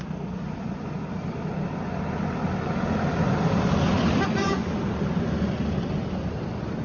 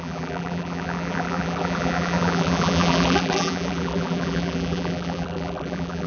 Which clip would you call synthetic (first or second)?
second